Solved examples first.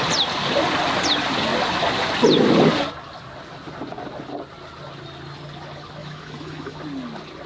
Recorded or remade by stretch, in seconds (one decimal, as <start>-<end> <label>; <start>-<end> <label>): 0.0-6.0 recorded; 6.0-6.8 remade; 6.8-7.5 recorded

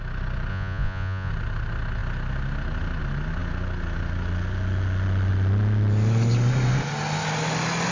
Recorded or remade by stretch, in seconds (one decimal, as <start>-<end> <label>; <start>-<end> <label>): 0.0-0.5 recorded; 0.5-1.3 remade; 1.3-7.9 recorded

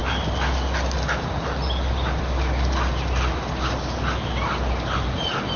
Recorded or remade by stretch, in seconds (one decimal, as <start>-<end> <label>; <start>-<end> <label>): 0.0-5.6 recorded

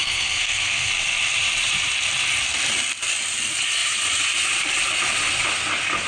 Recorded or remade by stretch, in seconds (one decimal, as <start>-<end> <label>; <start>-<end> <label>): 0.0-0.9 remade; 0.9-6.1 recorded

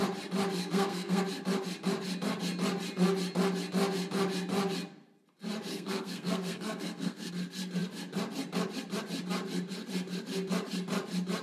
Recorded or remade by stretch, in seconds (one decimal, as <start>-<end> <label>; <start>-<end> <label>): 0.0-0.6 recorded; 0.6-1.2 remade; 1.2-5.7 recorded; 5.7-7.3 remade; 7.3-11.4 recorded